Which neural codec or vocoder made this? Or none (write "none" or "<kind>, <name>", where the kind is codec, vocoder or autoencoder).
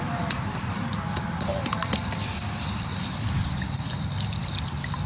vocoder, BigVGAN v2